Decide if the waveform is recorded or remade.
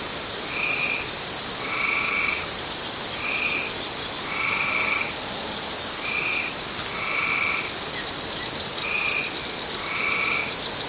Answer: recorded